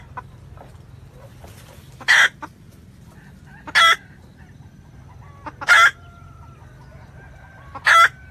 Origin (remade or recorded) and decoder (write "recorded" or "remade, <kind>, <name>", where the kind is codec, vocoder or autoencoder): recorded